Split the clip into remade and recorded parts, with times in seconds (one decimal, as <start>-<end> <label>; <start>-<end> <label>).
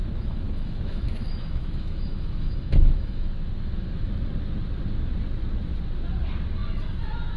0.0-4.1 remade; 4.1-7.4 recorded